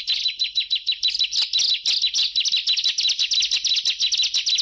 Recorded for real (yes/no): yes